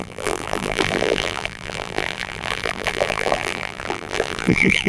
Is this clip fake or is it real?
fake